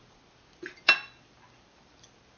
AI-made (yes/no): no